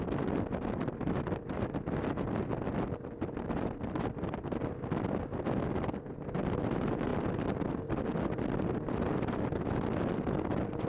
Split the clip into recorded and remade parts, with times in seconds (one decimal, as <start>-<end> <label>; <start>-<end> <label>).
0.0-10.9 recorded

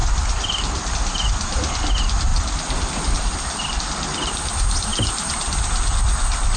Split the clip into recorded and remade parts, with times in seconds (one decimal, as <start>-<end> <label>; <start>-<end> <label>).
0.0-6.6 recorded

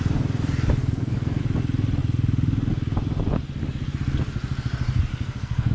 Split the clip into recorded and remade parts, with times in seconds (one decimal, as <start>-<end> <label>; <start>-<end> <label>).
0.0-0.8 recorded; 0.8-1.4 remade; 1.4-5.1 recorded; 5.1-5.7 remade

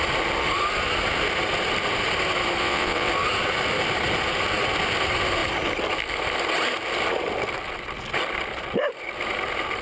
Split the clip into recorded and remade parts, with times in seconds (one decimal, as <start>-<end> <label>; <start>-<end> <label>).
0.0-2.6 recorded; 2.6-3.1 remade; 3.1-9.8 recorded

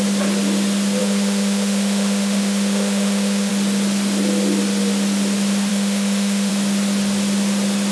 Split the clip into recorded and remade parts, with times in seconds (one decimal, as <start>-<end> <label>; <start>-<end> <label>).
0.0-1.0 recorded; 1.0-3.5 remade; 3.5-5.7 recorded; 5.7-6.5 remade; 6.5-7.9 recorded

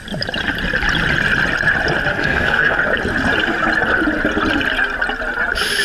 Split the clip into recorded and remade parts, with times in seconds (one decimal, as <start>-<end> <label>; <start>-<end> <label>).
0.0-2.1 recorded; 2.1-2.8 remade; 2.8-5.8 recorded

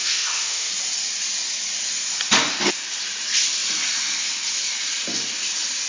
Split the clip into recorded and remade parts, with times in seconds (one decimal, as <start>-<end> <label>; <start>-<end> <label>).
0.0-0.7 remade; 0.7-5.9 recorded

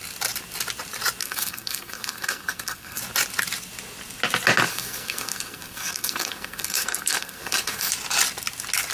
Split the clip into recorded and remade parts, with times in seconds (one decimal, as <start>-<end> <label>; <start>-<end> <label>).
0.0-1.2 recorded; 1.2-3.0 remade; 3.0-4.7 recorded; 4.7-7.9 remade; 7.9-8.9 recorded